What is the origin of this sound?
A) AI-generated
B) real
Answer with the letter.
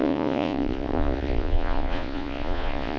A